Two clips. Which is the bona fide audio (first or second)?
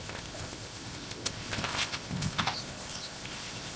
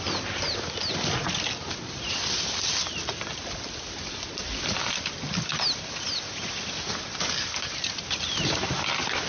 second